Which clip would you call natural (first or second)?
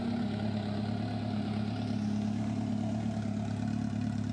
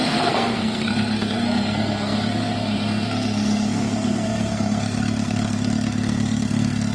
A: first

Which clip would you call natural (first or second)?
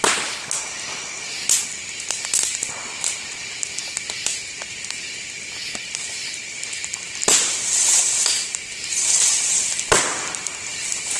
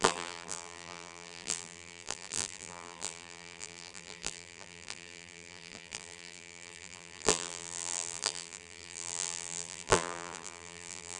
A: first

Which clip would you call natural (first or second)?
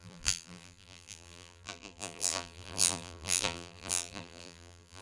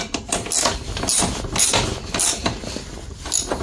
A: second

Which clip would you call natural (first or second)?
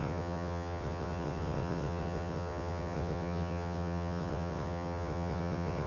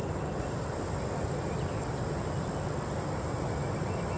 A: second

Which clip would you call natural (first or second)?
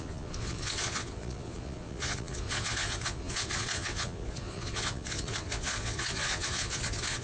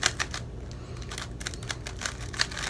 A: second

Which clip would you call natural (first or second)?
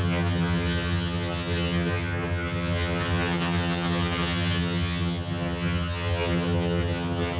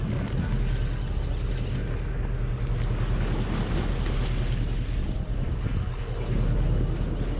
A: second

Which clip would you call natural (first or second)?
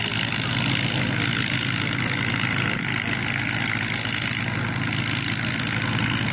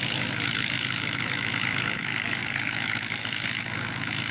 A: first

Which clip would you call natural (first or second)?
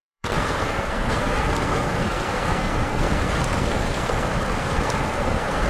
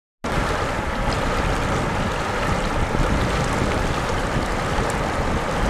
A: second